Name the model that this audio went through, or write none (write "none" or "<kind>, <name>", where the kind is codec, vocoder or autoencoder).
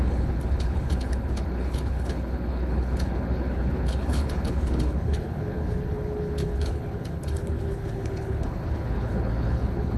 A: codec, HILCodec